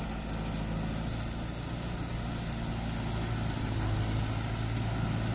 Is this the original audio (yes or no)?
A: yes